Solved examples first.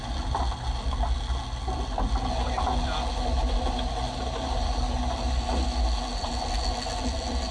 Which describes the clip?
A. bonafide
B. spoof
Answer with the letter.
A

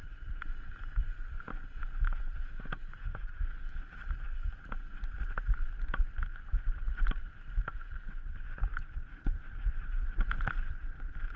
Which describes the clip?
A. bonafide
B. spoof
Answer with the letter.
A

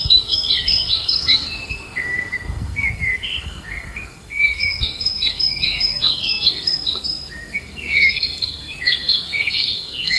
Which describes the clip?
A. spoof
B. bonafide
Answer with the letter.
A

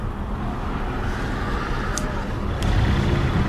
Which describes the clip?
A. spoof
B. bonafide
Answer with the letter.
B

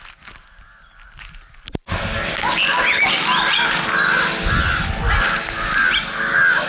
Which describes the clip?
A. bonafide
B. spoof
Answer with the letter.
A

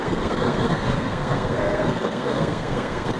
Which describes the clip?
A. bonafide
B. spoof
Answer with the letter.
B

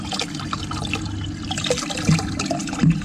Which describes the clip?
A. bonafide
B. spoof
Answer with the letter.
A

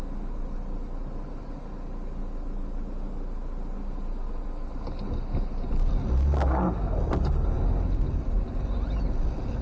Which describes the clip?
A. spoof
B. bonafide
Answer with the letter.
B